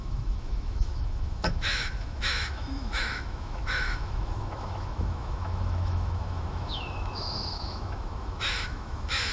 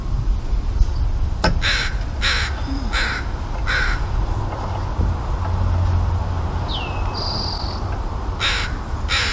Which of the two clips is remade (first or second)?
first